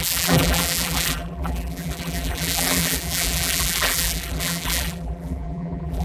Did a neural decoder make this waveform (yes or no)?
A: yes